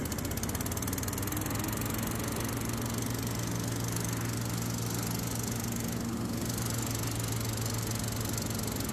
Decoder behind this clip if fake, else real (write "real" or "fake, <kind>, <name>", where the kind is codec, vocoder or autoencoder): real